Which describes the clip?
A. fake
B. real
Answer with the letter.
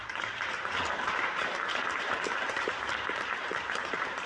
A